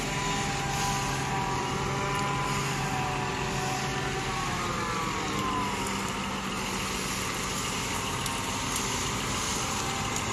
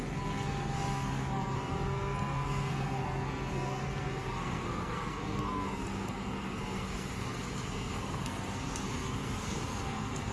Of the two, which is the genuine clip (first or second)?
first